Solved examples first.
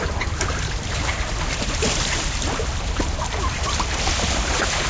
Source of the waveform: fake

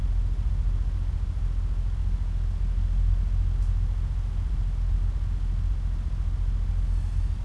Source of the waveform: real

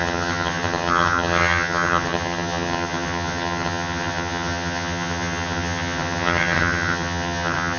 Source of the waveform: fake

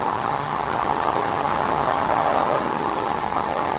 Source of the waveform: fake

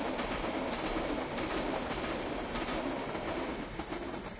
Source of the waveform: real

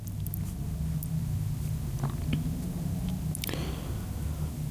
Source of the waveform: real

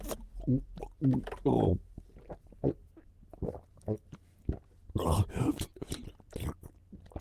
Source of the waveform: real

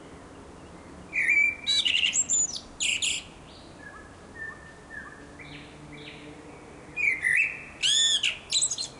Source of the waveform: real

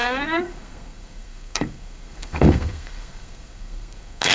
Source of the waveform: fake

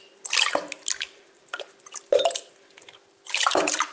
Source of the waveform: real